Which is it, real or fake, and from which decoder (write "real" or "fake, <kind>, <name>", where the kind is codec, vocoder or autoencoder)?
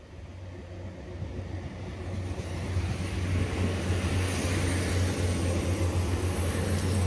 real